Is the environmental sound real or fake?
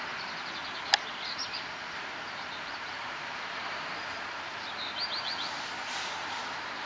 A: fake